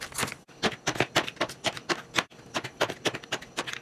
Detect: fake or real real